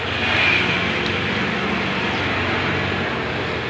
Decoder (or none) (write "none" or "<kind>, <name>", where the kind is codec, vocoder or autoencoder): none